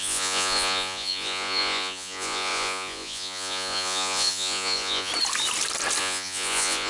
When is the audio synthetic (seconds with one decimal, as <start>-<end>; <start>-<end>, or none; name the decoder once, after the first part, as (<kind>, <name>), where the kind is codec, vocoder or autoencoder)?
0.0-5.1 (vocoder, Vocos); 6.0-6.9